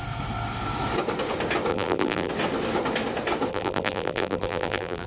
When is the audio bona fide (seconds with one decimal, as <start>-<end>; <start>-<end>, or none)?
0.0-1.7; 2.3-3.5